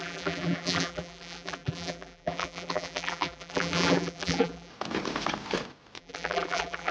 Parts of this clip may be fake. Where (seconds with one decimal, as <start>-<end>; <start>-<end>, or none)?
0.0-4.7; 6.0-6.9